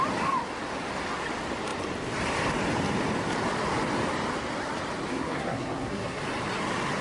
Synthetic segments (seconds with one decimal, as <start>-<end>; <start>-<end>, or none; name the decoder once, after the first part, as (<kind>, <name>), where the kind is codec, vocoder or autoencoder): 5.1-6.2 (codec, SNAC)

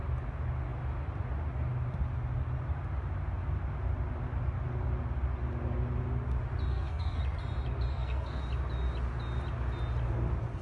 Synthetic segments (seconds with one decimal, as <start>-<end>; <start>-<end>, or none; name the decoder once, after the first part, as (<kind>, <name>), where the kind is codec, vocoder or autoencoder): 6.7-7.2 (codec, SNAC); 7.9-8.4

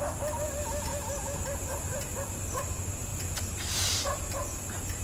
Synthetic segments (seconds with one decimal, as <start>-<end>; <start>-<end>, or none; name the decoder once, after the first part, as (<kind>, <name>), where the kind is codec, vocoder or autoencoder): 3.1-4.3 (vocoder, BigVGAN v2)

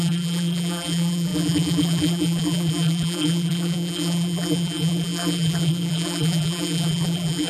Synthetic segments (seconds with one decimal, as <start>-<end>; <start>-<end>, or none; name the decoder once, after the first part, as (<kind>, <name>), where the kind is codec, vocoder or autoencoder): 0.0-7.5 (vocoder, BigVGAN v2)

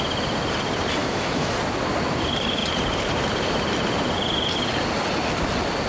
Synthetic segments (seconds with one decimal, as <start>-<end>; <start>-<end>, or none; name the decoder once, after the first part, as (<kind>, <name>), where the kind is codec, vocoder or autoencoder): 1.0-1.5 (autoencoder, DAC-VAE)

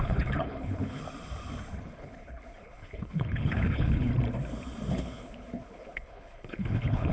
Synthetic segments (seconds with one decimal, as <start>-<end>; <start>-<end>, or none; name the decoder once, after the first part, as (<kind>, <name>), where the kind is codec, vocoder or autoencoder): 0.0-1.0 (codec, HILCodec); 1.8-4.1; 4.9-7.1

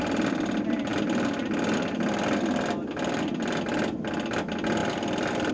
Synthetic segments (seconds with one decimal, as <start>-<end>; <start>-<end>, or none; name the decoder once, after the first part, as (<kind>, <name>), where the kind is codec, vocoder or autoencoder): none

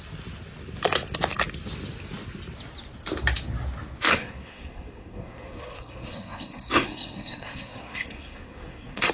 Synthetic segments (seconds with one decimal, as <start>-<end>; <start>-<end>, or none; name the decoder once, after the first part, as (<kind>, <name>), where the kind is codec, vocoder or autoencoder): 4.1-9.1 (codec, SNAC)